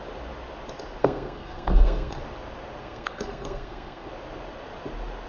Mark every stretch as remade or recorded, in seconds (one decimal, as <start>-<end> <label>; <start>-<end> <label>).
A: 0.0-1.0 recorded; 1.0-2.2 remade; 2.2-2.8 recorded; 2.8-4.1 remade; 4.1-5.3 recorded